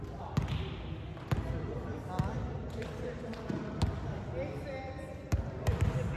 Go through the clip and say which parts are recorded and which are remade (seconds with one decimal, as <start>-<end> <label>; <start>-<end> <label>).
0.0-6.2 recorded